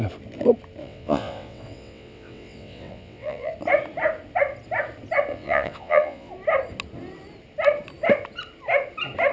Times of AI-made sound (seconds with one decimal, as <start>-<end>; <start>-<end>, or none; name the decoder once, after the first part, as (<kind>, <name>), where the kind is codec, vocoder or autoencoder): 0.8-3.5 (vocoder, WaveNeXt); 5.3-6.3